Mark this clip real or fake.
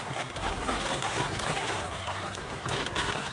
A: fake